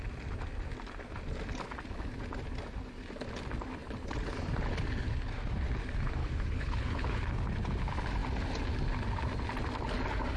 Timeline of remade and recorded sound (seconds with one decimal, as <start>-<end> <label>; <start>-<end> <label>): 0.0-6.2 recorded; 6.2-7.3 remade; 7.3-10.4 recorded